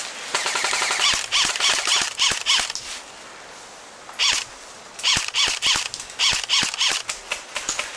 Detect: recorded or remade recorded